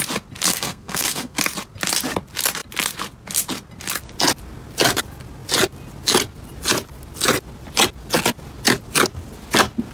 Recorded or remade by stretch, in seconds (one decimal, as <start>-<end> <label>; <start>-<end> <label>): 0.0-0.5 recorded; 0.5-1.4 remade; 1.4-9.9 recorded